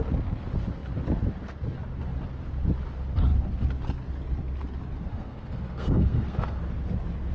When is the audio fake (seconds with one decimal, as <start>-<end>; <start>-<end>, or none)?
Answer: 5.1-6.6